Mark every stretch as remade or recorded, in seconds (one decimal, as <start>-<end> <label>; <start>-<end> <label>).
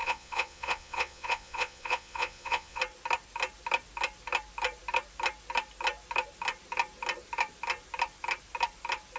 0.0-2.8 remade; 2.8-9.2 recorded